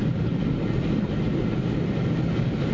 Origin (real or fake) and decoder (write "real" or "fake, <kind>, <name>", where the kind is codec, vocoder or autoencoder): real